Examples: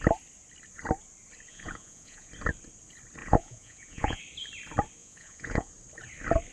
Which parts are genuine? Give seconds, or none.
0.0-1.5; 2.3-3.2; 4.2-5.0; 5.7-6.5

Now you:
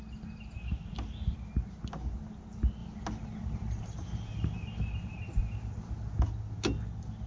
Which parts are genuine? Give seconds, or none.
0.0-7.3